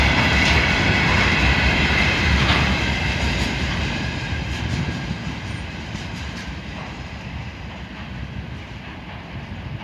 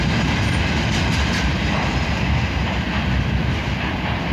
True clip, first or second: second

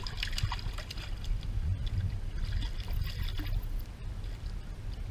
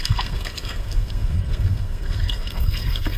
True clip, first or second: first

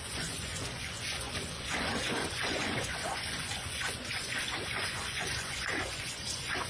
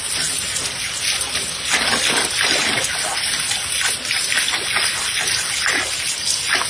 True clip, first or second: second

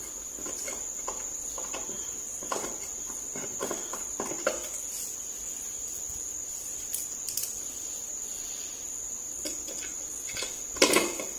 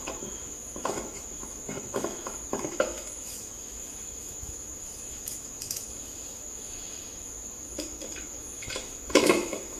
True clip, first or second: first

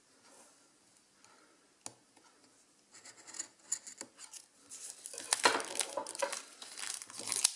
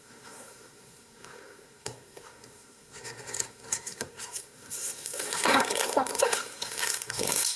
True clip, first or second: first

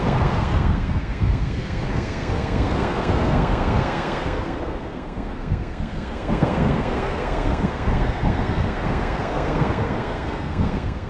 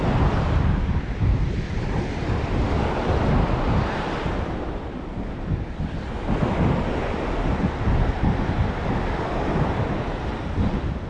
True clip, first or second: second